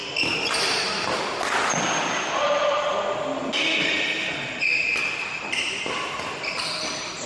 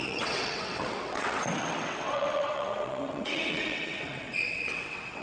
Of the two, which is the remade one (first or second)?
second